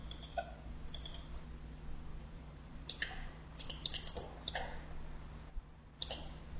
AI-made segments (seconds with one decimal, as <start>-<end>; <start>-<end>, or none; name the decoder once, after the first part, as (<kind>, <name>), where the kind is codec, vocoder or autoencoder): 2.1-4.5 (vocoder, BigVGAN v2); 5.5-6.0